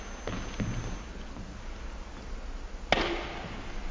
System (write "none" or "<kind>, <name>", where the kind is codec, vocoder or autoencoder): none